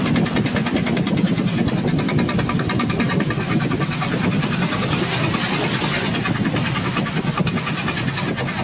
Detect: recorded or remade recorded